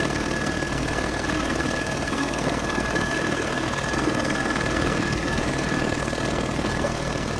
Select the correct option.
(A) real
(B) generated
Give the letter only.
B